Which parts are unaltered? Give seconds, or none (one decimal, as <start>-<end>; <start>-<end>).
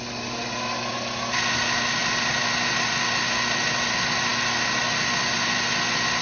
0.0-4.3; 4.8-6.2